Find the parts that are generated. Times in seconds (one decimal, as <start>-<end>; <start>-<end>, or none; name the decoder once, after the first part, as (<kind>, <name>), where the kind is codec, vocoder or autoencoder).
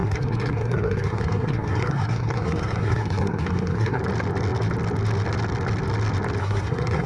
0.0-4.0 (codec, SNAC); 6.4-7.1